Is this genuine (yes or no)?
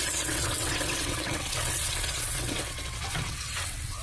no